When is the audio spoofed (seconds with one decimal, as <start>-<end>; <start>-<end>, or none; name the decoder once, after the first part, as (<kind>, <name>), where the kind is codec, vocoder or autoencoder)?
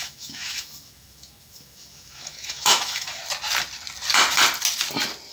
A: 0.0-3.2 (autoencoder, DAC-VAE)